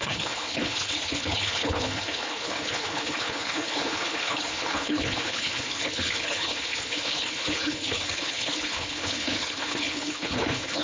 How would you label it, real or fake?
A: fake